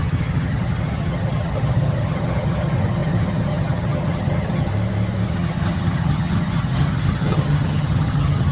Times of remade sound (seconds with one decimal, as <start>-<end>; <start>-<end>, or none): 0.0-4.7; 5.3-8.5